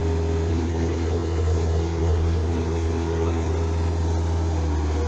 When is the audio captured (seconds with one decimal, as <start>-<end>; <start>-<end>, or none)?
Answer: 0.0-0.5; 3.5-5.1